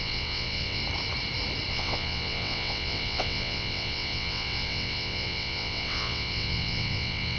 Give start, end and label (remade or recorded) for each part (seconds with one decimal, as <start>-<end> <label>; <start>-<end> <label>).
0.0-0.8 remade; 0.8-1.7 recorded; 1.7-7.4 remade